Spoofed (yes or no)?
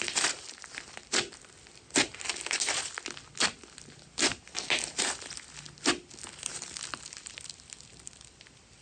no